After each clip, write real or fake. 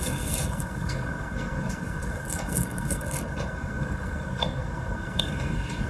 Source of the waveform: fake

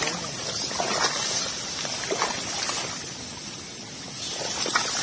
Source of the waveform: real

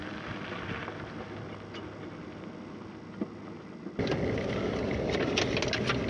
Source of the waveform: real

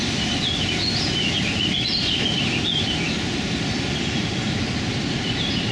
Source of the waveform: real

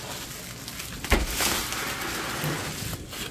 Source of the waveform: real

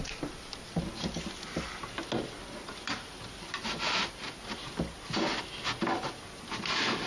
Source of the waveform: real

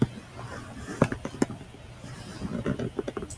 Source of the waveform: real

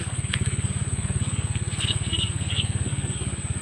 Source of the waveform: fake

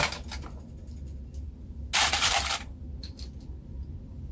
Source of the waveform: real